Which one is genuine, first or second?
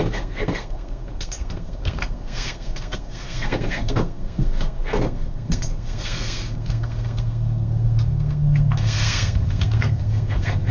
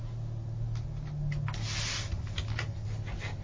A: second